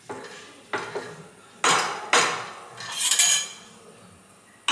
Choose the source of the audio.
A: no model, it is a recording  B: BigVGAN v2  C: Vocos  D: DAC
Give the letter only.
A